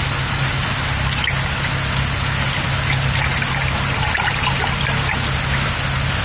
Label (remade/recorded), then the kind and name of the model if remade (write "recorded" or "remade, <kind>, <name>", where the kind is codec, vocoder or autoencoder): recorded